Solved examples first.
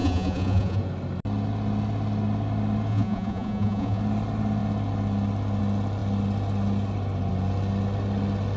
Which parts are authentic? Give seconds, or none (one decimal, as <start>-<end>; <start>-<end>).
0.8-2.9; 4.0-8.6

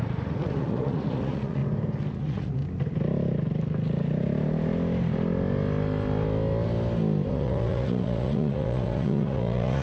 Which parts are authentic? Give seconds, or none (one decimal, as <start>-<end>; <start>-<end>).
1.6-2.1; 2.6-7.3

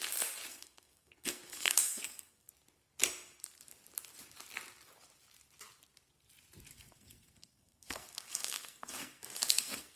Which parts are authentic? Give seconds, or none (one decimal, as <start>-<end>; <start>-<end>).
0.0-0.5; 2.5-6.7

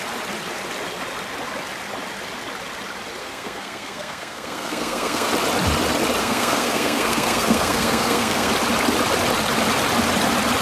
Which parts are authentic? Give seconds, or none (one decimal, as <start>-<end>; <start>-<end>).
0.0-3.2; 5.3-6.2; 8.5-10.6